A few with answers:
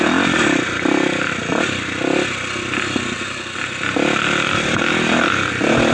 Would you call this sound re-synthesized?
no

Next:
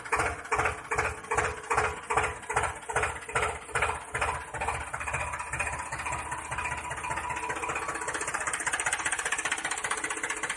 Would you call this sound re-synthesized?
no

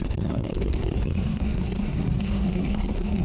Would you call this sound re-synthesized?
yes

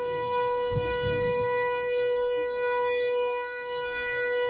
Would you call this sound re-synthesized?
yes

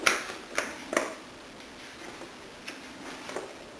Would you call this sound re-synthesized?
no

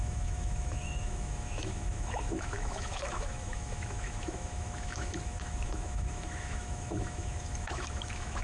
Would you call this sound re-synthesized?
yes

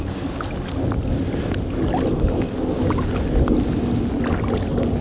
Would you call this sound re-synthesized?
no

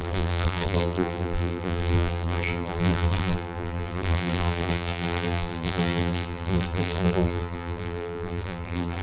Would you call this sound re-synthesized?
yes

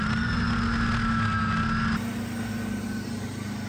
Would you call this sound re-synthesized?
no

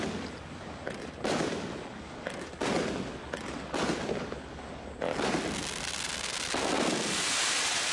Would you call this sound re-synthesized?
no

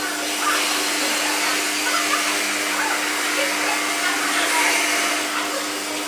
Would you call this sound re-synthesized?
no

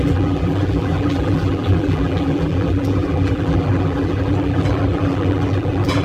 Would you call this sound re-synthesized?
yes